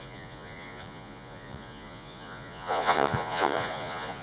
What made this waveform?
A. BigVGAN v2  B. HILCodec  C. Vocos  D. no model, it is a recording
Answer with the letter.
C